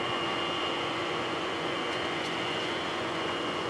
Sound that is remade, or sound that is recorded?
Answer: remade